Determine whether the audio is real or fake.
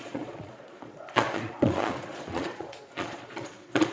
fake